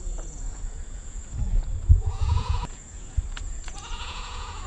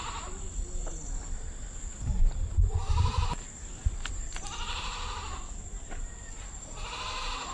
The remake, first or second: first